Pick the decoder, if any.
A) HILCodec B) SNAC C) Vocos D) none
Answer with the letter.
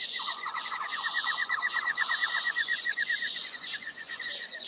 C